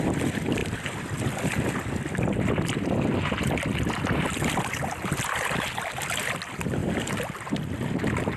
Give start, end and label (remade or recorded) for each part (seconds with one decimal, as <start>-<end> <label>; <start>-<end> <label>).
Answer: 0.0-8.4 recorded